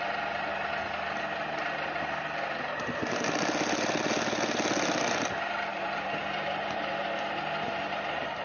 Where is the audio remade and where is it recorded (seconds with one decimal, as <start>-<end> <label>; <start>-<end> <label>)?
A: 0.0-5.7 recorded; 5.7-6.2 remade; 6.2-8.4 recorded